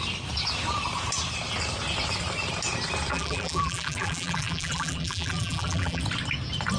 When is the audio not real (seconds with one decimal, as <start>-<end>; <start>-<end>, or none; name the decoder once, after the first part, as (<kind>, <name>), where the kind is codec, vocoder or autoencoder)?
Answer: 3.1-6.0 (vocoder, BigVGAN v2)